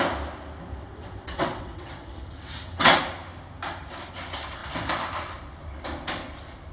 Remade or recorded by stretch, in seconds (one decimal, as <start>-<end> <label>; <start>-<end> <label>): 0.0-0.7 recorded; 0.7-3.0 remade; 3.0-6.7 recorded